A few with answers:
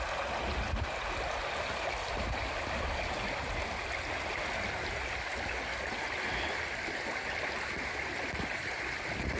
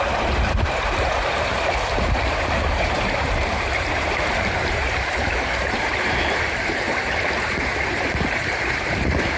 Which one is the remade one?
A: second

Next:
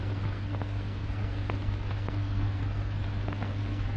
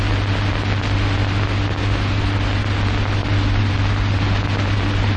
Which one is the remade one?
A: first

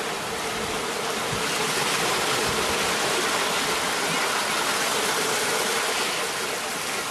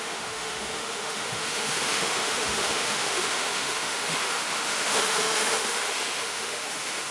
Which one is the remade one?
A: second